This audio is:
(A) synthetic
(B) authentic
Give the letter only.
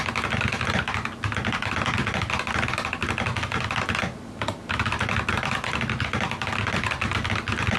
B